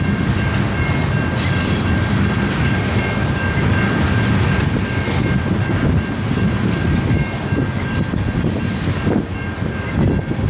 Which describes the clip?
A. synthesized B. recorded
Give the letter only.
B